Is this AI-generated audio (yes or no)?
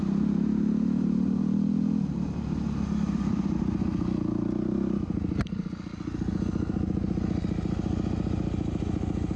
no